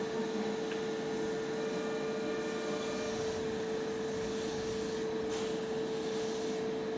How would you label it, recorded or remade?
recorded